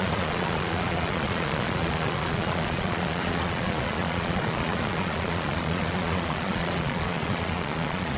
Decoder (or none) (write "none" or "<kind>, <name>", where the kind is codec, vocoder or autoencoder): vocoder, Vocos